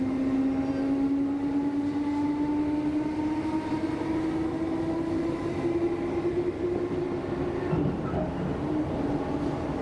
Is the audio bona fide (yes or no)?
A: yes